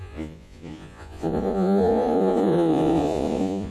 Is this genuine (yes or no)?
no